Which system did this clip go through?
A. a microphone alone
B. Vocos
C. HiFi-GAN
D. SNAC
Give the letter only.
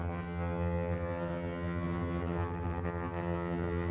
C